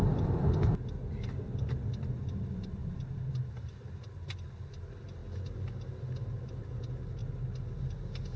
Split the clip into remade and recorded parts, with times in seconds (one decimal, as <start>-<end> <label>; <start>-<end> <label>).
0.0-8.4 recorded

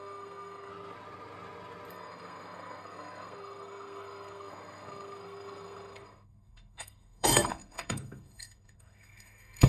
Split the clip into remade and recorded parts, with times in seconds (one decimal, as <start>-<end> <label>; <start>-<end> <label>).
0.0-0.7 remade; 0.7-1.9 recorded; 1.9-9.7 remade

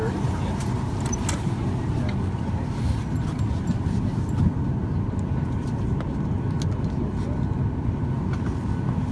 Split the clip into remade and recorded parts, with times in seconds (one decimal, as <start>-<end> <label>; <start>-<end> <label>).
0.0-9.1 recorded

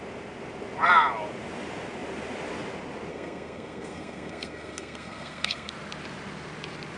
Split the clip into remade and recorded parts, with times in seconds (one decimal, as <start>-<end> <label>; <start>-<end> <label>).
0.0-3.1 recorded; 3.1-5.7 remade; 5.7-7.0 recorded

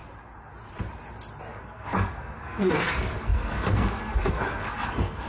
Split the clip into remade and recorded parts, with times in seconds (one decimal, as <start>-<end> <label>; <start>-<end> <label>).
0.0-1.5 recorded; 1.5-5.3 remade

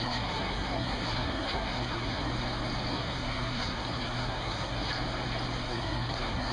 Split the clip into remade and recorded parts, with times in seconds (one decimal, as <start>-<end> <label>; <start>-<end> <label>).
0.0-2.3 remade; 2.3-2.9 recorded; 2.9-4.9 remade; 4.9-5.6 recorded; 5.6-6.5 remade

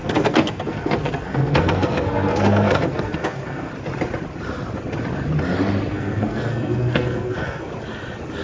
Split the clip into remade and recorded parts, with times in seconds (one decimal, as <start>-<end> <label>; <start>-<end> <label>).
0.0-3.7 remade; 3.7-5.9 recorded; 5.9-7.7 remade; 7.7-8.4 recorded

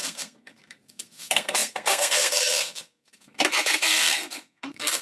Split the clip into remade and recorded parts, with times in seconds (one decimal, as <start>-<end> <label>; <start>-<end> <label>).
0.0-5.0 remade